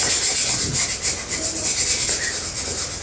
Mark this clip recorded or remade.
recorded